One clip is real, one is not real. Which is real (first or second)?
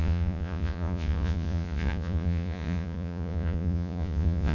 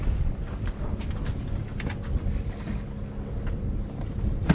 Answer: second